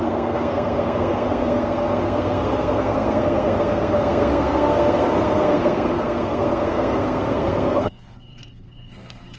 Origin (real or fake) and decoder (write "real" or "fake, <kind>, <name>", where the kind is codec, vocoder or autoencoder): fake, codec, SNAC